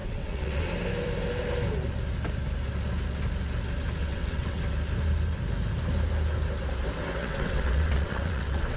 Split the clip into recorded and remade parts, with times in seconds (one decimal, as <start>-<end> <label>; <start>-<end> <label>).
0.0-0.6 remade; 0.6-4.0 recorded; 4.0-4.6 remade; 4.6-7.2 recorded; 7.2-8.8 remade